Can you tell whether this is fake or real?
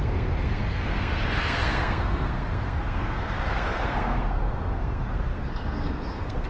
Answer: fake